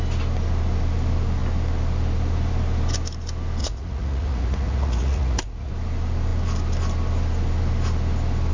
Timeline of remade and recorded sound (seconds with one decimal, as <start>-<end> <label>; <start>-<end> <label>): 0.0-3.6 recorded; 3.6-5.7 remade; 5.7-8.5 recorded